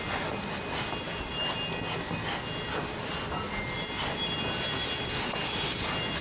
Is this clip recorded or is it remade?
recorded